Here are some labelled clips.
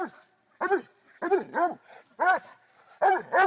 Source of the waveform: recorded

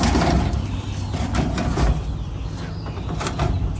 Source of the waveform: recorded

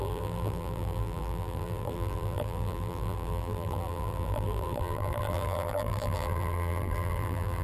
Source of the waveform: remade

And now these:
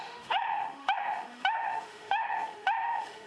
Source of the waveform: remade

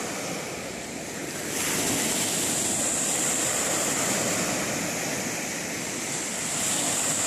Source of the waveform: remade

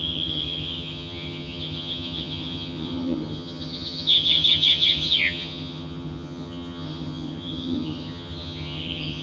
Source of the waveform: remade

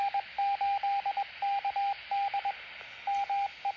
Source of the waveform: recorded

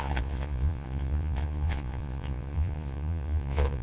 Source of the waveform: remade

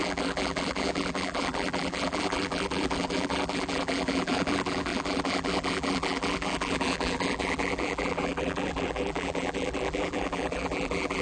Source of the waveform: remade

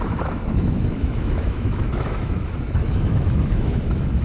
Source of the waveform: remade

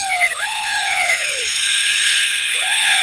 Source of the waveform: remade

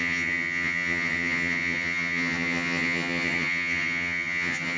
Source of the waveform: remade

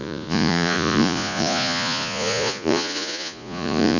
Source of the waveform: remade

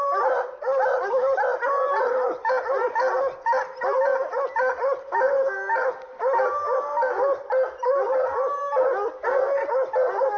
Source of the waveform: recorded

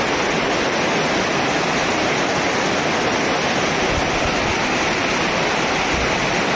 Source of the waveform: recorded